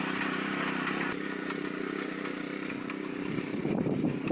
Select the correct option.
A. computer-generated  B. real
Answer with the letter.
A